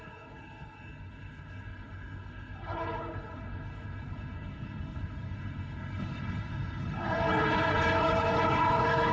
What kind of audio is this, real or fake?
fake